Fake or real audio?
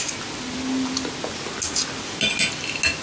real